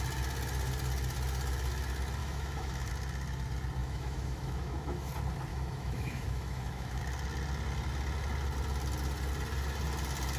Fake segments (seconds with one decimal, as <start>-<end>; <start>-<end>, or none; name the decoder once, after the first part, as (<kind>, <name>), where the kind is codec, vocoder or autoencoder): 2.2-2.9 (autoencoder, DAC-VAE); 3.8-5.1; 5.5-7.0